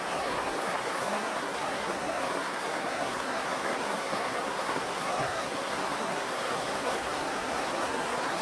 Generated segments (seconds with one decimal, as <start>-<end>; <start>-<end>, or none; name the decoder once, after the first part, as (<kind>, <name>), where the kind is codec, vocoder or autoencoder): 0.0-8.4 (codec, SNAC)